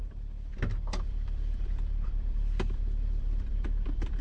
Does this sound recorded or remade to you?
remade